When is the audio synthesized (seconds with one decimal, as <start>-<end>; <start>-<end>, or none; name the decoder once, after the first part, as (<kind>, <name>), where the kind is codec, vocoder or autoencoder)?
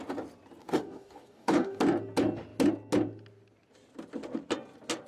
0.6-1.8 (codec, DAC)